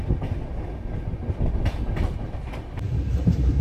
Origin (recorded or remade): recorded